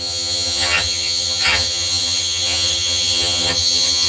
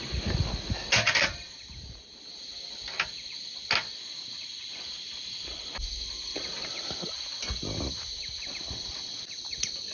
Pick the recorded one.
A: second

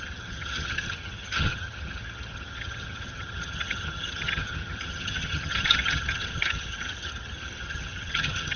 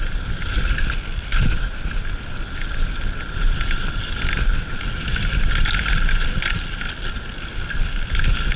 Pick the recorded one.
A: second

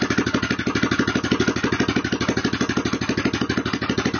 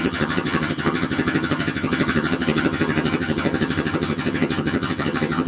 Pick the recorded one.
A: first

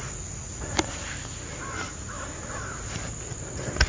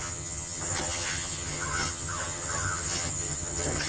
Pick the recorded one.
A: first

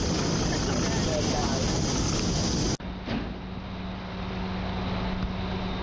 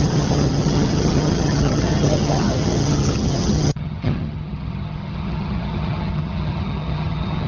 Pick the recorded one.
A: first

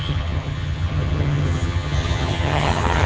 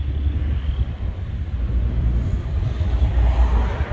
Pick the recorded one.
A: second